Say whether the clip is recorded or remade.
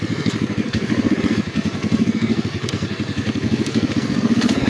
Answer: remade